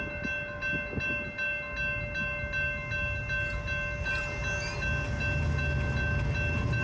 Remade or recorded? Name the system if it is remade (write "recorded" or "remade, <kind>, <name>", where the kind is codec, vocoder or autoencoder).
recorded